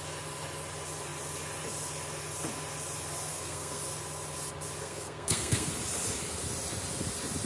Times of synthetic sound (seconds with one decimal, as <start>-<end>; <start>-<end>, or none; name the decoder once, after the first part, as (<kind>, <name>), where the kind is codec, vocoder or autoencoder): 3.3-3.8 (codec, SNAC); 4.8-5.7

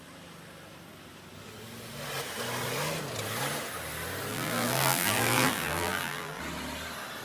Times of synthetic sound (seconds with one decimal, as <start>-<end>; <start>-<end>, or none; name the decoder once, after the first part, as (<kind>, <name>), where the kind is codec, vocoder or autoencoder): 4.3-6.4 (vocoder, BigVGAN v2)

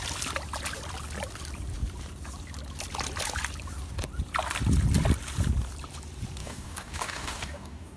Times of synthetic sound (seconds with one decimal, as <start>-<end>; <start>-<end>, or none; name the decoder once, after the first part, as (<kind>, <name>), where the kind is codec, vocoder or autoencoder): 6.4-8.0 (codec, DAC)

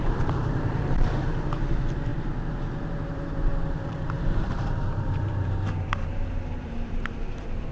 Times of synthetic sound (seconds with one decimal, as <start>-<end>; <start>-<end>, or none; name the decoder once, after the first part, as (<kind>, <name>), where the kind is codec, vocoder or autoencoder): 0.0-7.7 (vocoder, BigVGAN v2)

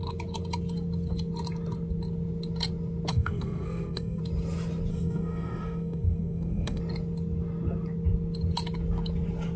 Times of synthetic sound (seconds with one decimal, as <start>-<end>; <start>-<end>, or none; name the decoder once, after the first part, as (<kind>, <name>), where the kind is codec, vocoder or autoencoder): 3.1-4.2 (codec, SNAC); 4.9-6.8